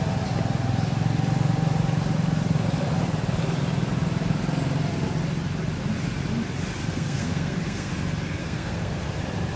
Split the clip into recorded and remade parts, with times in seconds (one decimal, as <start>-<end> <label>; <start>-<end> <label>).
0.0-6.8 recorded; 6.8-7.9 remade; 7.9-8.4 recorded; 8.4-9.1 remade; 9.1-9.6 recorded